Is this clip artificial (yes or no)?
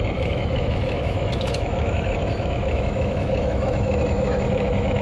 yes